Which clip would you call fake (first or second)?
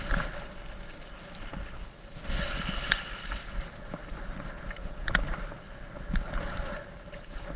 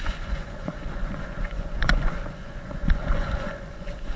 second